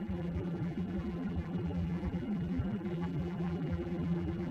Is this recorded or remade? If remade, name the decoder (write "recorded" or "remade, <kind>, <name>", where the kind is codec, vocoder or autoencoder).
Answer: remade, vocoder, BigVGAN v2